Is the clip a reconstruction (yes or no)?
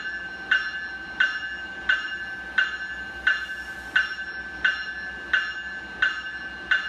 no